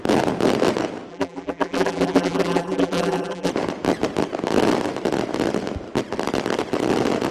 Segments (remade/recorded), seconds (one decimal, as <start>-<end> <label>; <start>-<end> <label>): 0.0-1.1 recorded; 1.1-3.5 remade; 3.5-7.3 recorded